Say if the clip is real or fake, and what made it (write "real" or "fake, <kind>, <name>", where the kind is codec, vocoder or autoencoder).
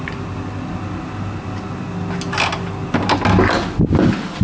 real